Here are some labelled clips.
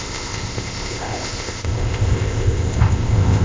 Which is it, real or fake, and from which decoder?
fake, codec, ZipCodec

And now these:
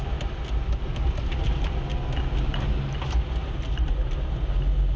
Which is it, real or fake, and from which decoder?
real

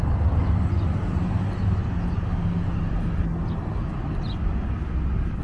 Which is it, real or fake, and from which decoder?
real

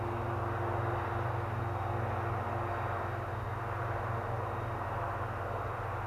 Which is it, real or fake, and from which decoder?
real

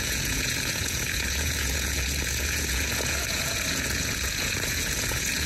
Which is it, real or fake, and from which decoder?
fake, vocoder, Vocos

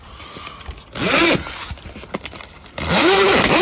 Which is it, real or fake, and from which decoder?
real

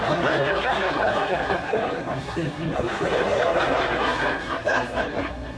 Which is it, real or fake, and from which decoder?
fake, codec, SNAC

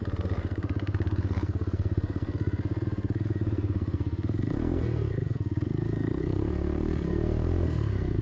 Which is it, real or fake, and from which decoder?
fake, codec, SNAC